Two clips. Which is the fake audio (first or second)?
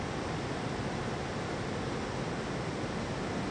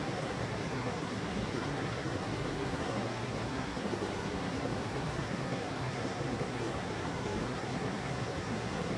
second